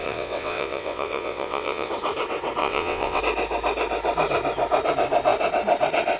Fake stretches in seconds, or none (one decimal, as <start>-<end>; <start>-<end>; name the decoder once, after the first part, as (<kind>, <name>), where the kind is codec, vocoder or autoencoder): 0.0-1.9 (vocoder, WaveNeXt); 2.6-3.2